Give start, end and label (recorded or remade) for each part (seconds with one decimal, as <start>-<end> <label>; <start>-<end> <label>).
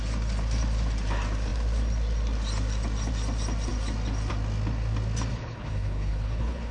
0.0-5.3 recorded; 5.3-6.7 remade